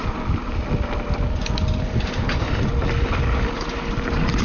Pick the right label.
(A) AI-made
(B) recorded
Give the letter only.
B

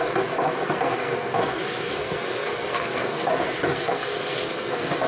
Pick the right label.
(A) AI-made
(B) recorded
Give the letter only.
A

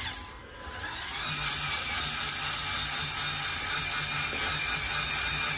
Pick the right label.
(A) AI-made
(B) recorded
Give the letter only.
B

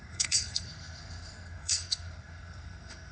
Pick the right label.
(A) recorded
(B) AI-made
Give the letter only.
B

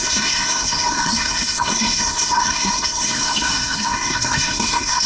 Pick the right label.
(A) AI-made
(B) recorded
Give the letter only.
A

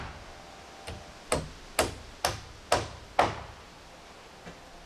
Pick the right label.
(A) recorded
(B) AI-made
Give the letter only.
A